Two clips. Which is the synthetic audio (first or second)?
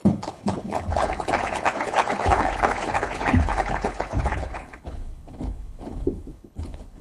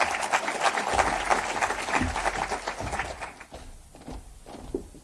first